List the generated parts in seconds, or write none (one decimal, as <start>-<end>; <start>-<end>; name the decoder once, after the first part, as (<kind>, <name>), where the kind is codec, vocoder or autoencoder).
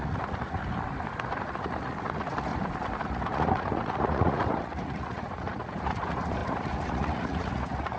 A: 0.0-0.6 (vocoder, Vocos); 1.4-2.5; 3.0-8.0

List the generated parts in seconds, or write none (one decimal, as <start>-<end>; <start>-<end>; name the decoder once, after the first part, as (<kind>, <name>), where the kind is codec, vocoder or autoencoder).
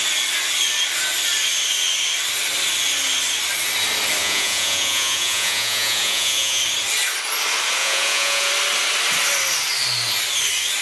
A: 4.2-6.6 (vocoder, Vocos); 7.8-8.5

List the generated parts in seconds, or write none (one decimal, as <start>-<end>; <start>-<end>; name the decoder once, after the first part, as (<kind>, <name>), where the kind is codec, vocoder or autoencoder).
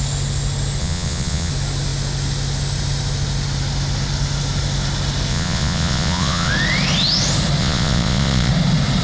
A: 0.8-1.5 (vocoder, Vocos); 5.3-6.5; 7.6-8.5